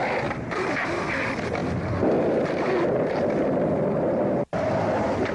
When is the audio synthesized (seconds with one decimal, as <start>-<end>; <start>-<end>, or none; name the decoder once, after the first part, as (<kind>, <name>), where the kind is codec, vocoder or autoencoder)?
none